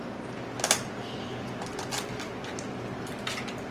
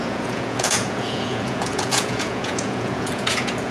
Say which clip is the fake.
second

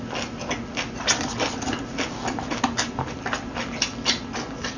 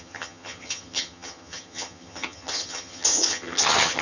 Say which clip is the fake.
second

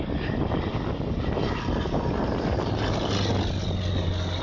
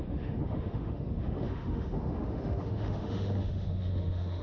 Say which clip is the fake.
second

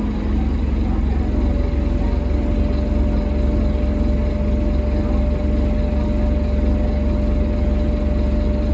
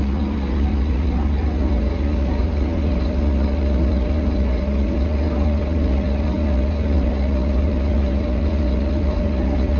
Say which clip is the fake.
second